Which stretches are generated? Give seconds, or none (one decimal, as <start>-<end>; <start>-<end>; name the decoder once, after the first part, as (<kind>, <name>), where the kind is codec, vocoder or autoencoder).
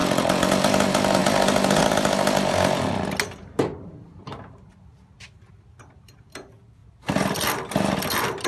none